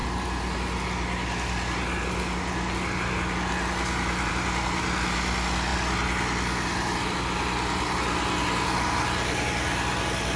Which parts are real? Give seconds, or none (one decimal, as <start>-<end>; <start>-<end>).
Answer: 0.0-10.4